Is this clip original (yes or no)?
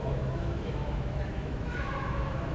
no